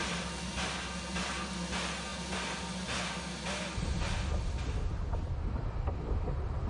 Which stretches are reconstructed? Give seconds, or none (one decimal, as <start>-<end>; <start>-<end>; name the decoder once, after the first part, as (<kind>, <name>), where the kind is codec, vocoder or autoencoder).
none